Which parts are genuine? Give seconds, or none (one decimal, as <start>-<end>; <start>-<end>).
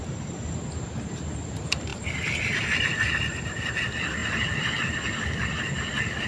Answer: 0.0-6.3